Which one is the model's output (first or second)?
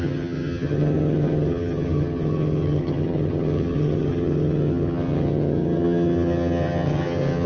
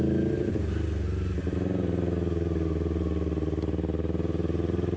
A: first